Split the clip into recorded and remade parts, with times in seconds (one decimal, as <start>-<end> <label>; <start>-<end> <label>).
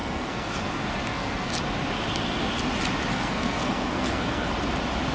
0.0-1.5 remade; 1.5-3.1 recorded; 3.1-4.5 remade; 4.5-5.1 recorded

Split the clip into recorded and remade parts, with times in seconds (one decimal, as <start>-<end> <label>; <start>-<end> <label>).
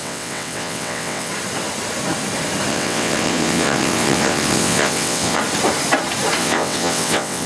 0.0-1.3 remade; 1.3-2.7 recorded; 2.7-5.4 remade; 5.4-6.4 recorded; 6.4-7.5 remade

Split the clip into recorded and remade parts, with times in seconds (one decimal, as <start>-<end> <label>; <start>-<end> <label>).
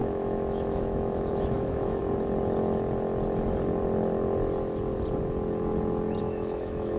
0.0-2.0 remade; 2.0-6.2 recorded; 6.2-7.0 remade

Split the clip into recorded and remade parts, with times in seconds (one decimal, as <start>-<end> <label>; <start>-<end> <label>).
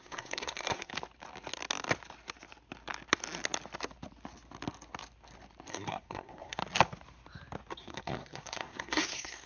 0.0-0.9 remade; 0.9-5.7 recorded; 5.7-6.6 remade; 6.6-7.8 recorded; 7.8-9.5 remade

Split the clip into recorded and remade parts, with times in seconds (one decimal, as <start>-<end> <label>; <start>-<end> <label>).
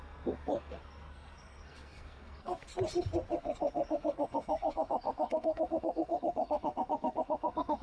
0.0-2.7 remade; 2.7-3.4 recorded; 3.4-7.8 remade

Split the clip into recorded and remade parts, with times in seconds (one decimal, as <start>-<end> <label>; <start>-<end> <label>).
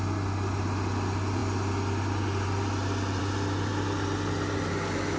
0.0-5.2 recorded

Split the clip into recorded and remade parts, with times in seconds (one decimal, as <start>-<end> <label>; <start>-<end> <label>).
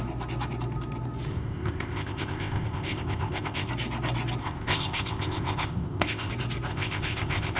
0.0-1.3 recorded; 1.3-3.7 remade; 3.7-4.4 recorded; 4.4-6.3 remade; 6.3-6.7 recorded; 6.7-7.6 remade